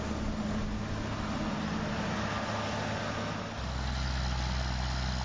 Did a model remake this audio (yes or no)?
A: no